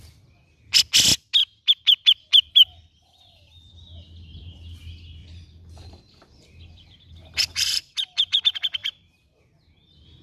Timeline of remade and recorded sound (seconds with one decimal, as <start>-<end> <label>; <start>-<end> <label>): 0.0-1.4 recorded; 1.4-2.5 remade; 2.5-5.2 recorded; 5.2-8.4 remade; 8.4-8.8 recorded; 8.8-9.4 remade; 9.4-10.2 recorded